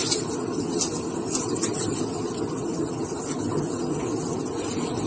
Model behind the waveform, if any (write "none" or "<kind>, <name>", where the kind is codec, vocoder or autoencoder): none